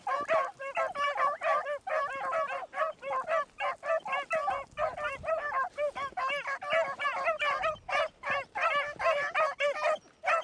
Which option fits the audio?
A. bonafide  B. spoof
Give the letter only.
A